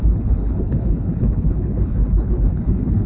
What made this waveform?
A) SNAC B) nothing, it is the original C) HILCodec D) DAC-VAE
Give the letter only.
C